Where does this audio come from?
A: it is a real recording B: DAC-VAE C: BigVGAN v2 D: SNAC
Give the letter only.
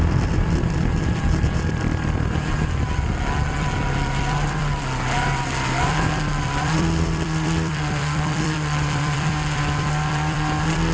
C